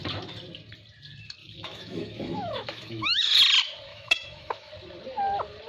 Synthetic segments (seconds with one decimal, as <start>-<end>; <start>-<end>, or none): 1.4-3.4; 3.9-4.7